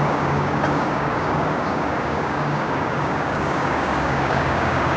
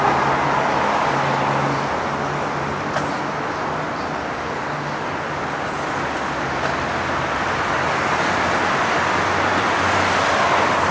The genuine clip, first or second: second